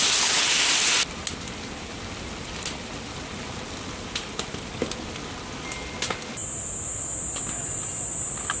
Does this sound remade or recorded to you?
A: recorded